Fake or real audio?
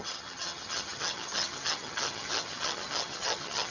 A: fake